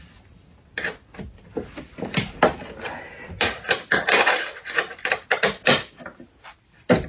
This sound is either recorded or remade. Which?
recorded